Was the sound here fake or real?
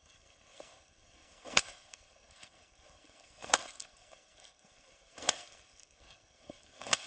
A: fake